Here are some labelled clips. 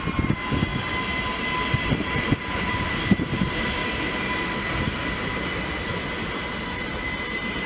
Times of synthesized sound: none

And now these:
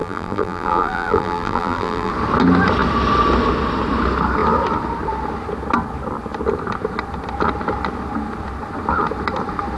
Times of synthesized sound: 0.0-2.1 (vocoder, BigVGAN v2)

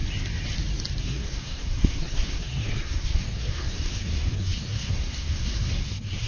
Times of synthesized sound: 1.0-6.3 (codec, SNAC)